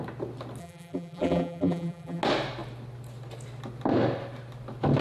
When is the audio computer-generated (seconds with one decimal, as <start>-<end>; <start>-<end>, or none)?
0.6-2.2